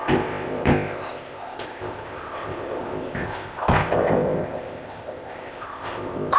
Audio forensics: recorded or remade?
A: remade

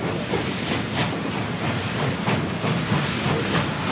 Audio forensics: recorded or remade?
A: remade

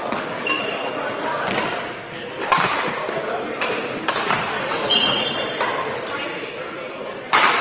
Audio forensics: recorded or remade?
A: recorded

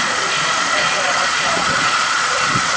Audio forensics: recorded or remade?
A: remade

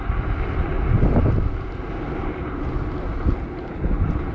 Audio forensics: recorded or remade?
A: recorded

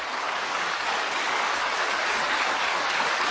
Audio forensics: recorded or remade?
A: remade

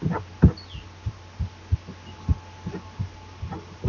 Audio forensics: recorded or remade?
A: recorded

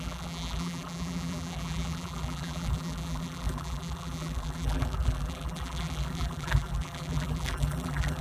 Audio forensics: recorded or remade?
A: remade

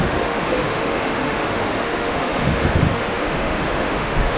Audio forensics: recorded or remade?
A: remade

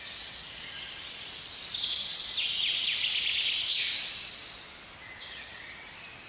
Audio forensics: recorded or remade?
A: recorded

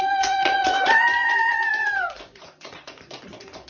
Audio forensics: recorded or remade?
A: remade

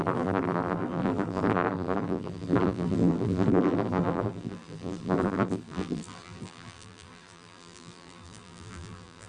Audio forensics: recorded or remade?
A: remade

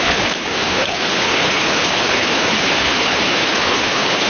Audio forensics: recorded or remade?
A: remade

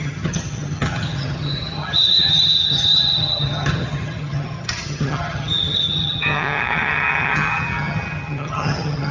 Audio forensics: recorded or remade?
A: remade